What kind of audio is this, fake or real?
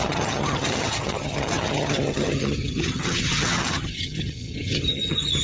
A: fake